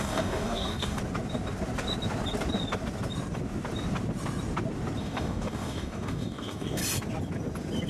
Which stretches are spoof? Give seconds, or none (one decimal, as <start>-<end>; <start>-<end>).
0.0-1.0; 5.0-6.8